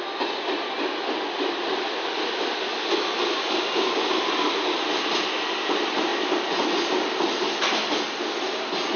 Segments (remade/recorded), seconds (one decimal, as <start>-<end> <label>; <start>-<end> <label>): 0.0-9.0 recorded